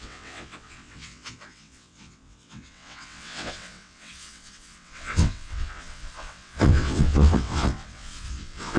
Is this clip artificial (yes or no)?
yes